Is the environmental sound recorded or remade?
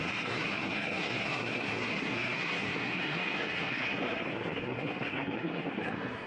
remade